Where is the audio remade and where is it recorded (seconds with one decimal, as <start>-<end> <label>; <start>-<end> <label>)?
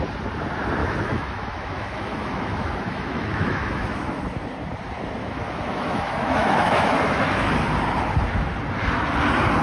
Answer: 0.0-0.8 recorded; 0.8-4.2 remade; 4.2-5.2 recorded; 5.2-7.5 remade; 7.5-9.6 recorded